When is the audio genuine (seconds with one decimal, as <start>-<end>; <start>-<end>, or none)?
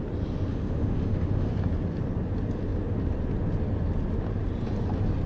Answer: 0.0-0.5; 1.5-5.3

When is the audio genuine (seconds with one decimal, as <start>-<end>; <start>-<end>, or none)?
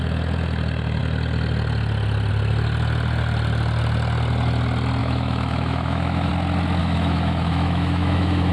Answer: 0.0-5.0; 6.3-6.8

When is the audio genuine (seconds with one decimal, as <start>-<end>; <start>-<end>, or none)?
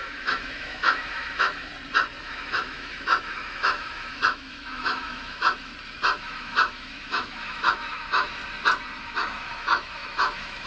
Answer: 1.7-2.2; 5.7-6.2; 8.4-9.0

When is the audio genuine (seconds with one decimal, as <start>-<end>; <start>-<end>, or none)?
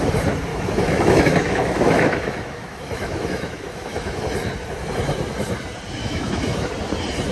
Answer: 0.0-0.5; 4.2-6.0; 6.7-7.3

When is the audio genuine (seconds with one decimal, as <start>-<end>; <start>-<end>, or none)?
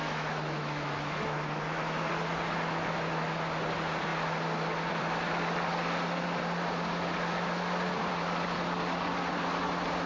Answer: 2.1-10.1